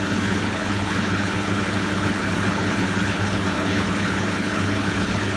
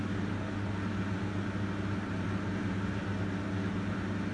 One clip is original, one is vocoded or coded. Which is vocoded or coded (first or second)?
first